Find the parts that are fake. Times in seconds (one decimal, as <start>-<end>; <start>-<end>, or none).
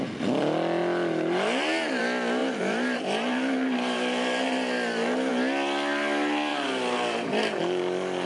2.4-5.3; 6.5-7.6